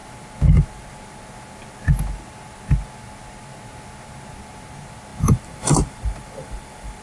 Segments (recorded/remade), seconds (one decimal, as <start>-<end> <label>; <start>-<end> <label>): 0.0-5.1 recorded; 5.1-7.0 remade